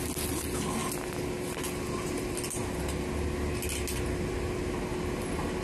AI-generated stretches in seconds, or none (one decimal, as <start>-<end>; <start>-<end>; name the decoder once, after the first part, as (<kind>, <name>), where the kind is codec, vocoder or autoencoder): none